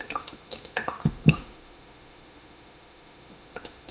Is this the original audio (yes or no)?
no